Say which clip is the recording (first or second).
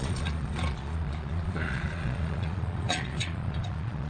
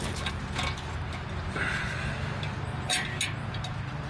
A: second